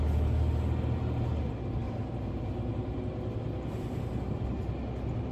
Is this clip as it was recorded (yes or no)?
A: yes